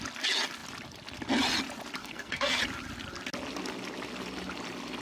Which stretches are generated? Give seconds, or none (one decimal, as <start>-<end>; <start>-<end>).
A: 2.0-2.6